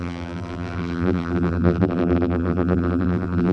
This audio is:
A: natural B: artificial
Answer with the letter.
B